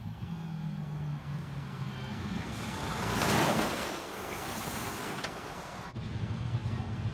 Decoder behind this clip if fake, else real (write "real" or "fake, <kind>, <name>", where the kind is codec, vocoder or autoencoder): fake, codec, SNAC